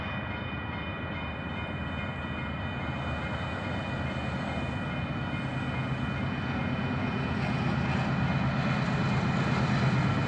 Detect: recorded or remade recorded